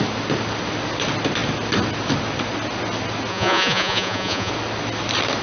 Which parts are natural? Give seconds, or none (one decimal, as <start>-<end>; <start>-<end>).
0.0-3.3; 4.5-5.4